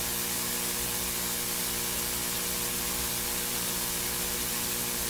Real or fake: real